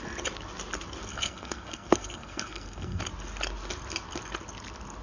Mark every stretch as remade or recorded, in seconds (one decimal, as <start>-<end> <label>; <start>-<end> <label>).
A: 0.0-1.1 recorded; 1.1-3.0 remade; 3.0-5.0 recorded